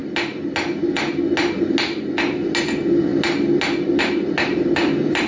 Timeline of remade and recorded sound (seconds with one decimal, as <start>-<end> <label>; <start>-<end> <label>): 0.0-5.3 recorded